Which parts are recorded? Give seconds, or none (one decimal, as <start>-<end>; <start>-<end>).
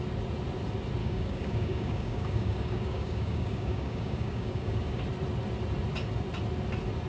0.0-1.0; 5.0-7.1